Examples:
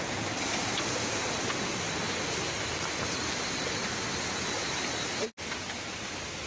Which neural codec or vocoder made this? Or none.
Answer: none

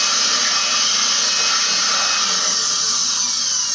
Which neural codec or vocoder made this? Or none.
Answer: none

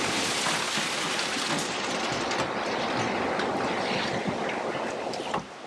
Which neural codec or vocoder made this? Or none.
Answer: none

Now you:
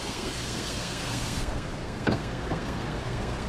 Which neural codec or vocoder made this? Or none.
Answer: codec, SNAC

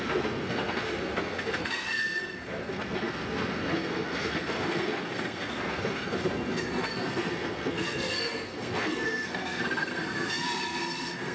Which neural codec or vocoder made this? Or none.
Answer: codec, SNAC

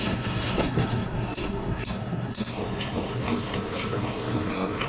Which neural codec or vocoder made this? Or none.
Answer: codec, SNAC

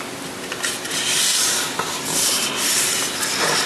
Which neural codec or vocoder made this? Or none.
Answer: none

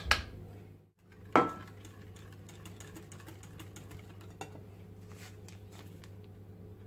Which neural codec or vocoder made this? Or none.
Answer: none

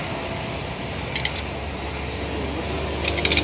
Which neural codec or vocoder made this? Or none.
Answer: none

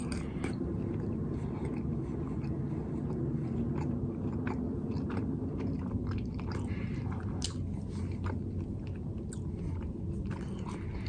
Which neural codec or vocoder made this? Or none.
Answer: none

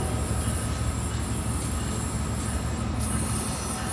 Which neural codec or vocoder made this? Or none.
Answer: none